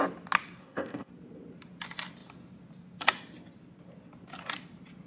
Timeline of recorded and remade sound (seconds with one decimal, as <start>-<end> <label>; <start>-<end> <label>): 0.0-0.6 recorded; 0.6-1.1 remade; 1.1-5.1 recorded